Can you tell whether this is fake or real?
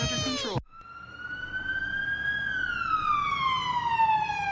real